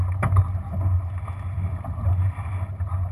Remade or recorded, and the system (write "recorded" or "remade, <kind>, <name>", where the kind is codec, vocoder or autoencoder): recorded